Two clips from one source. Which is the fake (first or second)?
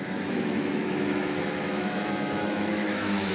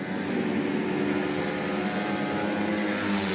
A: first